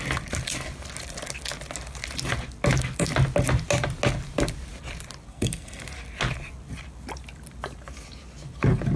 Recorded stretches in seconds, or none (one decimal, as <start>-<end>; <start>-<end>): 0.0-5.3; 5.8-9.0